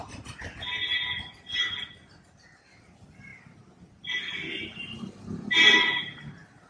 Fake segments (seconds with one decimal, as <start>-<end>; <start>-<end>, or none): none